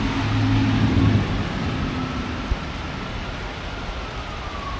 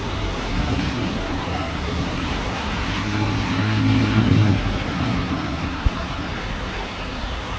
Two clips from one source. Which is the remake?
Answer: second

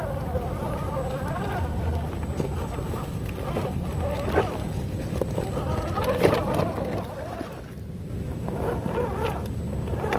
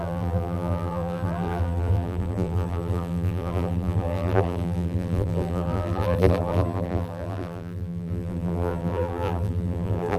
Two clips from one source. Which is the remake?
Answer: second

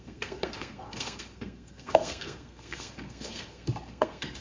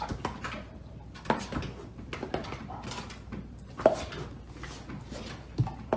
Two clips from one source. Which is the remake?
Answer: first